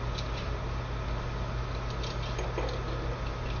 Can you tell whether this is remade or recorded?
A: recorded